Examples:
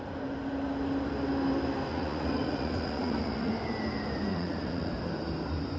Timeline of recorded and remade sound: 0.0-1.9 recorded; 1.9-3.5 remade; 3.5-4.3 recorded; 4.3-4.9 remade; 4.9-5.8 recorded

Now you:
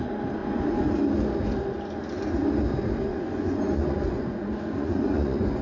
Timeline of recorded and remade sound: 0.0-0.4 recorded; 0.4-1.0 remade; 1.0-3.1 recorded; 3.1-5.6 remade